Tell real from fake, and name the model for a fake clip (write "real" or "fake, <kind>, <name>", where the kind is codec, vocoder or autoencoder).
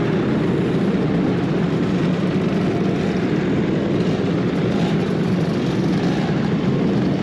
real